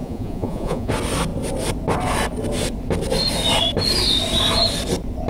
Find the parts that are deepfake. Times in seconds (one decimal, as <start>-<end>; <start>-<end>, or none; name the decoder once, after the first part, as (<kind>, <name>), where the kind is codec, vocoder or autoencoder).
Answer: 0.0-0.9 (vocoder, Vocos)